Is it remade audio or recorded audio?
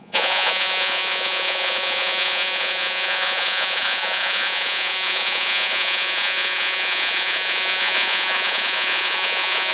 remade